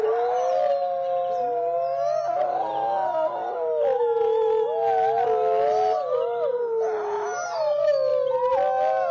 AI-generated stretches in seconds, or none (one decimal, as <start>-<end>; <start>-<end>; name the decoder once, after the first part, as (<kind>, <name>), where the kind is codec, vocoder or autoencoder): none